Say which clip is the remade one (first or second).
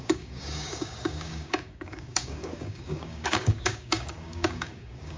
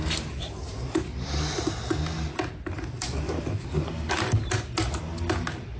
first